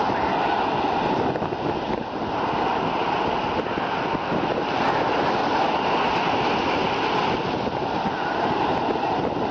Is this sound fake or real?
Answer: real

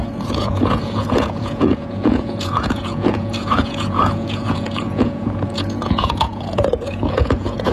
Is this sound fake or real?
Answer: fake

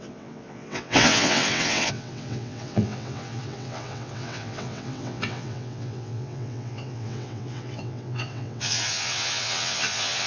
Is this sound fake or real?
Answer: fake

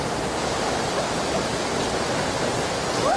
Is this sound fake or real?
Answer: real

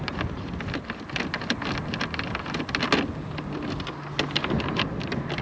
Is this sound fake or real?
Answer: real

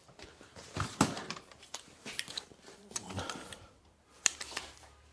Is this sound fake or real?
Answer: fake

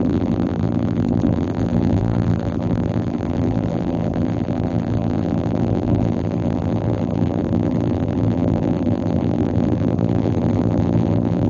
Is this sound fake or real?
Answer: fake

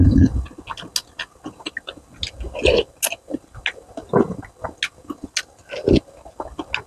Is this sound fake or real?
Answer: real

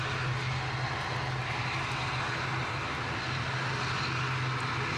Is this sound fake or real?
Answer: real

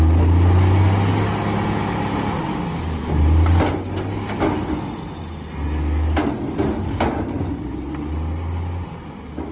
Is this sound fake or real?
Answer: real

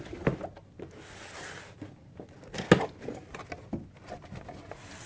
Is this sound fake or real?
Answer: real